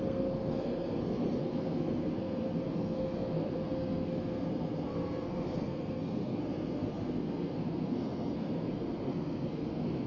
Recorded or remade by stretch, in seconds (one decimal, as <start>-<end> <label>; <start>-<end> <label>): 0.0-10.1 remade